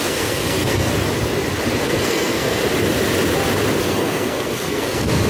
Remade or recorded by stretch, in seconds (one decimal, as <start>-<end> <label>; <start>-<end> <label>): 0.0-0.9 remade; 0.9-1.8 recorded; 1.8-2.6 remade; 2.6-3.8 recorded; 3.8-5.3 remade